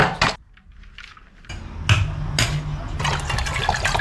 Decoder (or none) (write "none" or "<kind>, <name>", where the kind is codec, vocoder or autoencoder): none